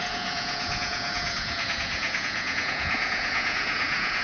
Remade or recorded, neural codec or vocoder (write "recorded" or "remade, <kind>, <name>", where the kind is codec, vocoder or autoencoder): remade, vocoder, Vocos